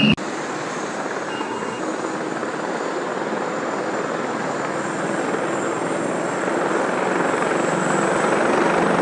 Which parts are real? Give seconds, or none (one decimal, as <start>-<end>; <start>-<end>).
0.0-1.3; 1.8-9.0

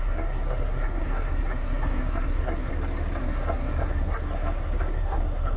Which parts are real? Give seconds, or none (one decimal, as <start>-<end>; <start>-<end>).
2.7-3.2

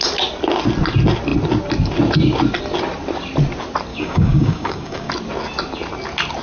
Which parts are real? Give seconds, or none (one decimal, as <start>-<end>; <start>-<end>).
0.0-3.9; 5.1-6.4

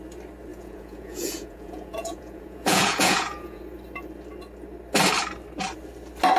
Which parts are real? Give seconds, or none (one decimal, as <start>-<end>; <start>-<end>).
0.0-0.5; 3.6-6.4

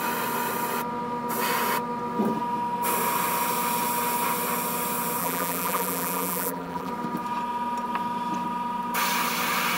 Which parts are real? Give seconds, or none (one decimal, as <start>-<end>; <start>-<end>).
0.0-5.2; 6.9-9.8

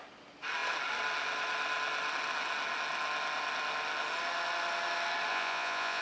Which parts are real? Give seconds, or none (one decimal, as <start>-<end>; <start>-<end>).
0.0-5.3